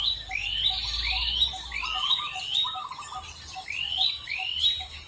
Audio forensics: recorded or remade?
recorded